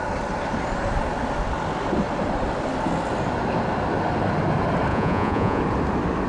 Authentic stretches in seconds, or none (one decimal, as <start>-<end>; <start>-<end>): 0.0-4.9; 5.6-6.3